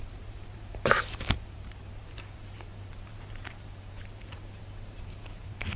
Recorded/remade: remade